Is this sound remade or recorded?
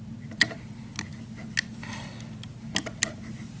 recorded